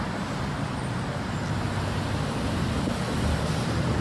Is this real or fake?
real